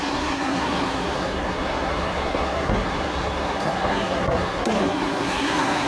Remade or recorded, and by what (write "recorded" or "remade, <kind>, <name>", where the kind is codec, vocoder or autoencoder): remade, codec, SNAC